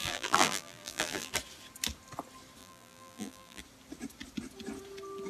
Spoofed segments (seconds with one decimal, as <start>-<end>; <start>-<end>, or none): 0.0-1.3; 2.6-3.6